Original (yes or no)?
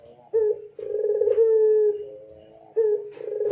yes